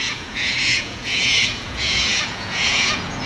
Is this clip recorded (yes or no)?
no